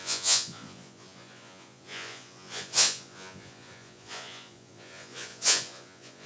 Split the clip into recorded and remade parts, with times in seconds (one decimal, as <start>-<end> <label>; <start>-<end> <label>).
0.0-6.3 remade